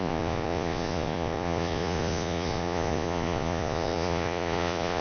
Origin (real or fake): fake